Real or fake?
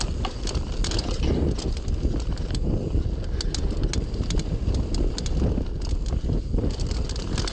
real